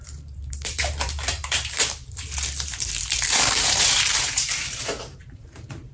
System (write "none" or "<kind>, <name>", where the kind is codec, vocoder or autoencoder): vocoder, BigVGAN v2